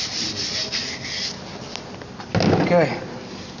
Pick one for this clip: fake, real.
real